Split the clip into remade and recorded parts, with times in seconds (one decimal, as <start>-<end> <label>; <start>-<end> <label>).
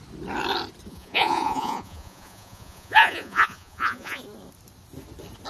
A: 0.0-0.9 recorded; 0.9-4.2 remade; 4.2-5.5 recorded